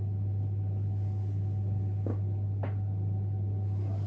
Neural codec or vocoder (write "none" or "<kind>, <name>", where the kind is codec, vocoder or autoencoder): none